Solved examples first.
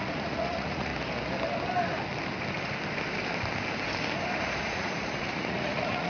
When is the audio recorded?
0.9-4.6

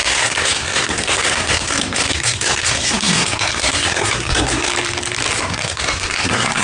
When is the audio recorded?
4.7-5.4

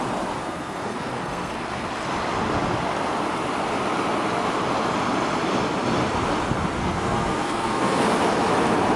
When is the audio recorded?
0.0-0.4; 1.9-6.8; 8.0-9.0

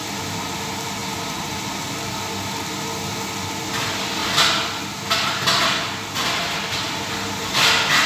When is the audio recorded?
0.0-1.0; 1.7-8.1

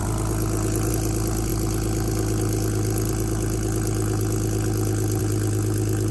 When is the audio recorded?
0.0-6.1

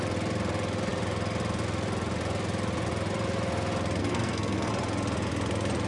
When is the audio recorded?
0.0-4.0; 4.7-5.9

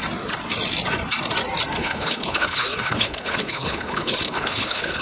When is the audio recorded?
0.0-1.8

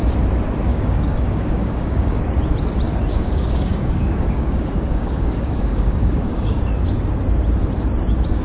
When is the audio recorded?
0.0-0.7; 2.3-3.1; 6.7-8.4